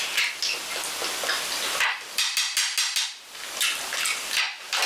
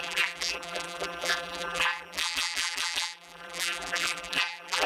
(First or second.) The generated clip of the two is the second